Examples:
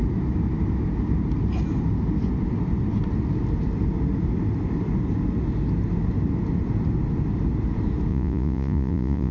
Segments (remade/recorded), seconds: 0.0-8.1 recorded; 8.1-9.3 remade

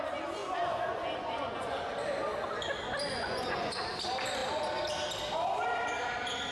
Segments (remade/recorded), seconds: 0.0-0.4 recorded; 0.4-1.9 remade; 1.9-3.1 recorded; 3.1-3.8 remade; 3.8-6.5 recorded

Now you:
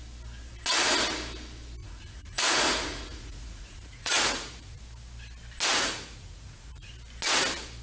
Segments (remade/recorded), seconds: 0.0-1.8 recorded; 1.8-4.8 remade; 4.8-5.7 recorded; 5.7-6.9 remade; 6.9-7.8 recorded